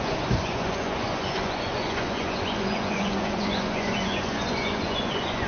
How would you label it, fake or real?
fake